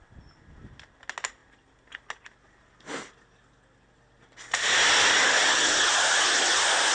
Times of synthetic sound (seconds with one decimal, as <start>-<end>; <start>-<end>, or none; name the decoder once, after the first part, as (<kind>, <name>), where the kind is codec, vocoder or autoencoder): none